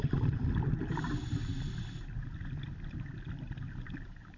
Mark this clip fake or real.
real